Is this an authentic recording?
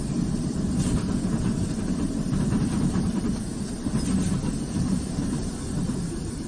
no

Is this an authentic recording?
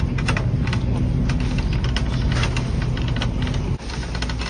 yes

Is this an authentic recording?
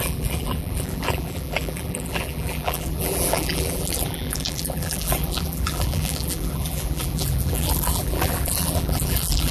no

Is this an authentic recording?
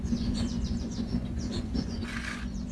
no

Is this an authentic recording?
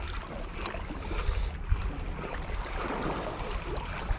yes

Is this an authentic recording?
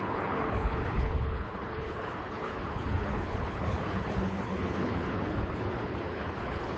no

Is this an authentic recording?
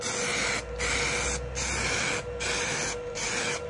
yes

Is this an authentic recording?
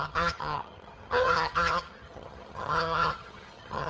no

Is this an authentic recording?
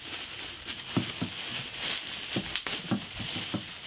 yes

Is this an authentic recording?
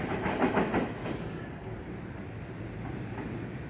yes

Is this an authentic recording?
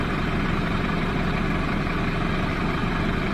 no